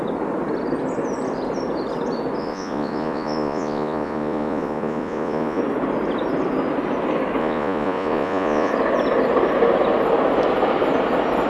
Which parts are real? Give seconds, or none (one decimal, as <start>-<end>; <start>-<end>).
0.0-2.4; 5.6-7.4; 8.7-11.5